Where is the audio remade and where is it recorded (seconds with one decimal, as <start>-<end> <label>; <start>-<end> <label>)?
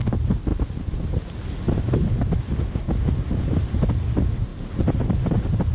0.0-5.7 recorded